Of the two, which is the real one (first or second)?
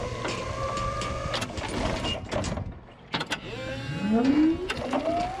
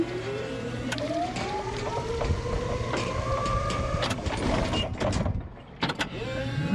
first